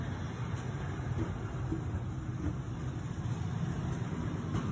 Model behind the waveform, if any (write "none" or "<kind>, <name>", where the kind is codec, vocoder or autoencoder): none